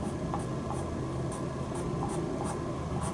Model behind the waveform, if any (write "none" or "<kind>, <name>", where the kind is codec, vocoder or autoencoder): none